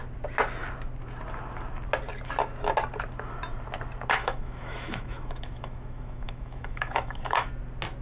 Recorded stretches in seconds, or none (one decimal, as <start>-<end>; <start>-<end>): 0.0-4.2; 7.5-8.0